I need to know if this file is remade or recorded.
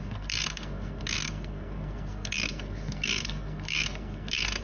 remade